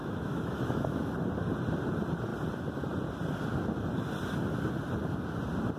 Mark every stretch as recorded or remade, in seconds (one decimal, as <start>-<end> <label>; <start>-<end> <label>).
0.0-1.1 remade; 1.1-5.8 recorded